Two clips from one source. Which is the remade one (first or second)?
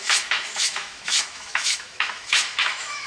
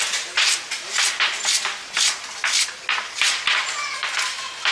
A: first